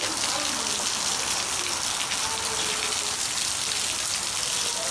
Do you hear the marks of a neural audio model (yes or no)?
no